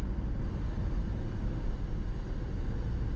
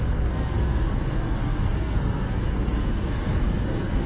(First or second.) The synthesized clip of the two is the second